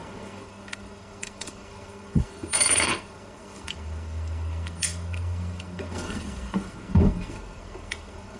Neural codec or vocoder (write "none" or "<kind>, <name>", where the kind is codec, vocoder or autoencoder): codec, SNAC